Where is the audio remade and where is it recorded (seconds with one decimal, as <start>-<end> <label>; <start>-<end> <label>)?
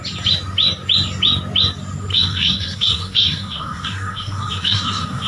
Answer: 0.0-2.1 recorded; 2.1-5.3 remade